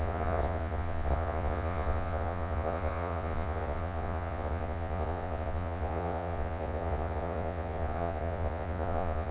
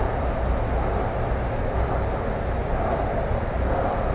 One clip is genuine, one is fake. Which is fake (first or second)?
first